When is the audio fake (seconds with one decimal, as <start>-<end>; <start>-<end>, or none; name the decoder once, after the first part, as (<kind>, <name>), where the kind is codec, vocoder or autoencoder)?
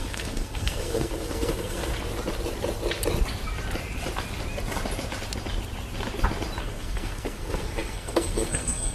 0.0-1.9 (codec, SNAC); 6.6-8.9